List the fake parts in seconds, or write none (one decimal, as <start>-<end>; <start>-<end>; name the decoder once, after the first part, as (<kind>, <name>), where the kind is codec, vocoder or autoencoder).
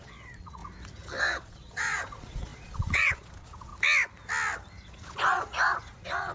0.0-0.6 (vocoder, Vocos); 1.2-3.7; 4.9-6.3